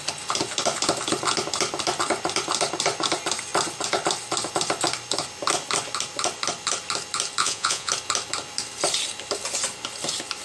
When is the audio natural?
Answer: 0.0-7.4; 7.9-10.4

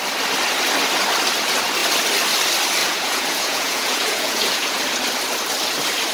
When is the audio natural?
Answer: 0.0-2.8; 4.8-6.1

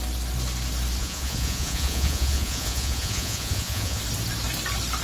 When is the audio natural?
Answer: 0.0-1.0; 4.0-5.0

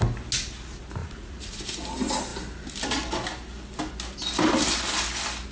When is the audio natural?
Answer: 0.0-1.0; 1.6-5.5

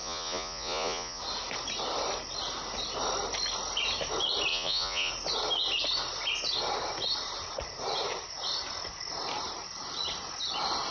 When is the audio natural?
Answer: 1.2-4.5; 5.1-10.9

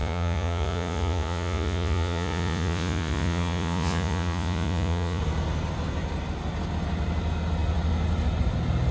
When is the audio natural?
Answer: 5.2-8.9

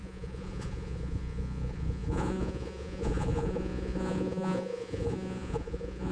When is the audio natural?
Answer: none